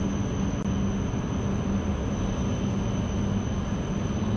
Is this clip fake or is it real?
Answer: real